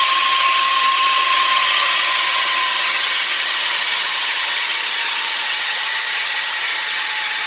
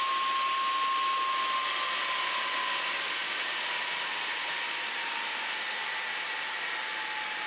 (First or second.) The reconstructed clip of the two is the first